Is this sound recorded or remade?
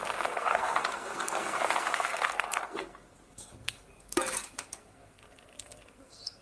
remade